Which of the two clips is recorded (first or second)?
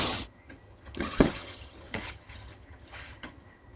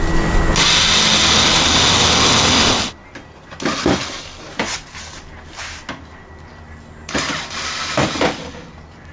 second